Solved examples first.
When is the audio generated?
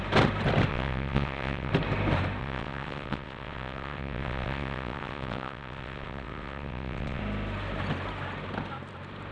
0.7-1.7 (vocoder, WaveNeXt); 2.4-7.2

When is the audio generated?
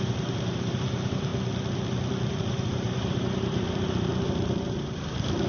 0.0-1.3 (vocoder, BigVGAN v2); 2.3-5.5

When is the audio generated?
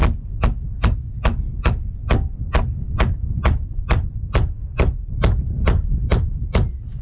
none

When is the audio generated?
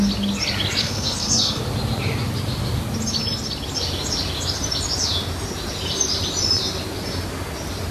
0.8-1.6 (codec, SNAC)